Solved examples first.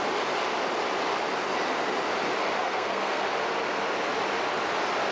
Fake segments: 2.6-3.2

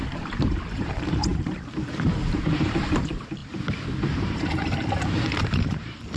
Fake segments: 0.0-3.4; 4.0-6.2

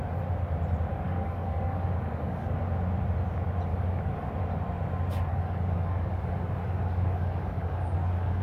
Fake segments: 0.9-2.6; 3.7-4.3; 5.3-8.4

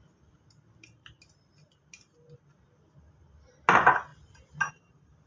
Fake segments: none

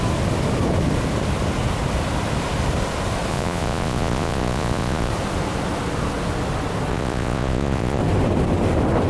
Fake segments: 3.3-5.1; 6.9-8.0